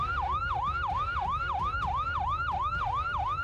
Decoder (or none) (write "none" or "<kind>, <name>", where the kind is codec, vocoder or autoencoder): none